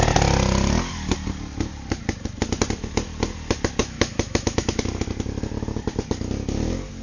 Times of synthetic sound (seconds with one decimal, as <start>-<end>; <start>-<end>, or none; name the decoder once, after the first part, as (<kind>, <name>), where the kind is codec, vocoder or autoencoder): 3.8-4.8 (autoencoder, DAC-VAE)